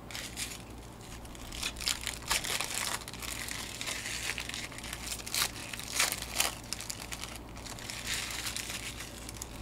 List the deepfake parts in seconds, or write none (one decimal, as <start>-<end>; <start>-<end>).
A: none